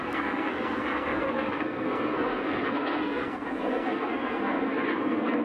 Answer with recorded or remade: remade